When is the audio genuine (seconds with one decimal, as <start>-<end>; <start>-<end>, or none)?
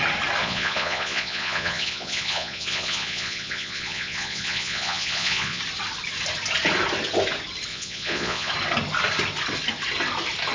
0.0-0.4; 5.6-7.7; 8.5-10.5